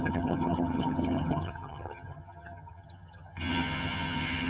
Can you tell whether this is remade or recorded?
remade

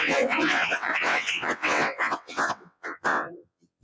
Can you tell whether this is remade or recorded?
remade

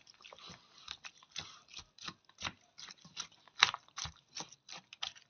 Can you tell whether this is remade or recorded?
recorded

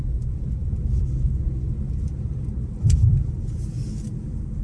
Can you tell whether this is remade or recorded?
recorded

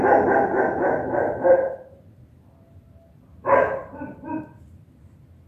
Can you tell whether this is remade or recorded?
remade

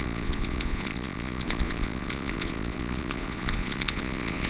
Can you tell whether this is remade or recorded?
remade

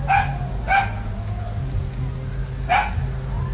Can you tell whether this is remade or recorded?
recorded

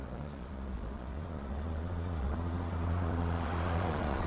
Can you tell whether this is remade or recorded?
remade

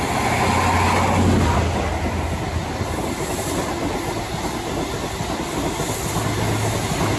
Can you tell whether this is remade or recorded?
recorded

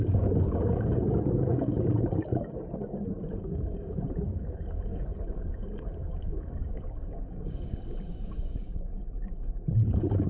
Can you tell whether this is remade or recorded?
remade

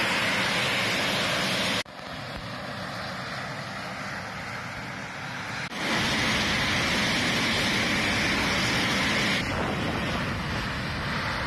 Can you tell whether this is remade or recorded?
recorded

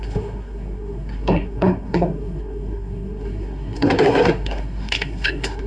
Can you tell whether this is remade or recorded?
remade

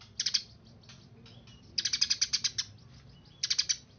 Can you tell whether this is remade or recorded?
recorded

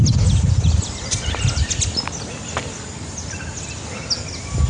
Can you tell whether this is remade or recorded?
recorded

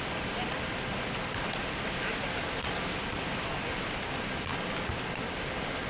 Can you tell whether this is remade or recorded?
recorded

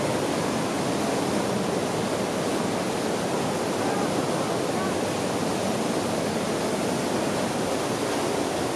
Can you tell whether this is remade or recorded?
recorded